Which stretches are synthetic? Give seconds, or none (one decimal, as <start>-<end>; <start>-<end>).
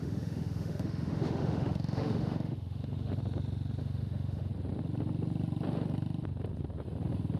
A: 0.0-3.2; 3.8-4.5